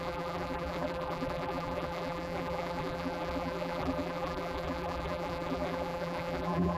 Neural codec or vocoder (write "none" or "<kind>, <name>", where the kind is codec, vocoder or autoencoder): vocoder, BigVGAN v2